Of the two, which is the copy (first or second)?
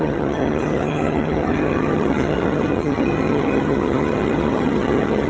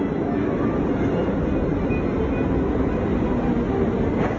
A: first